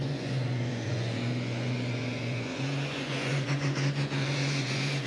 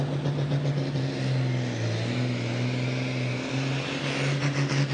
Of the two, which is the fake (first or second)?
first